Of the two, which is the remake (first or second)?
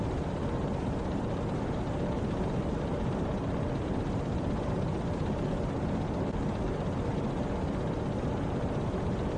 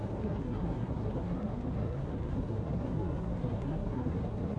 second